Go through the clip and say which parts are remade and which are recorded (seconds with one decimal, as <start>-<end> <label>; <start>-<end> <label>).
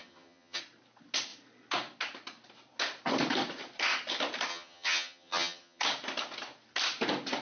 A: 0.0-0.6 remade; 0.6-4.5 recorded; 4.5-5.8 remade; 5.8-7.4 recorded